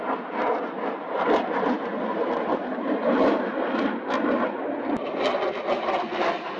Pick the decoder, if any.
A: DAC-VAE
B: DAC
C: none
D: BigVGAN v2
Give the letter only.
C